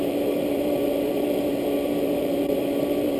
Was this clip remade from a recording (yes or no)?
yes